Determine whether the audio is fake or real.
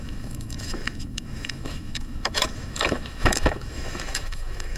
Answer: fake